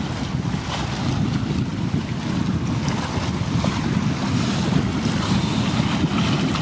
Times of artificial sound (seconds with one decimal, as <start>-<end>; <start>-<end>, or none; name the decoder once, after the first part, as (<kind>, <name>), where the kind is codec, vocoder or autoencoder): none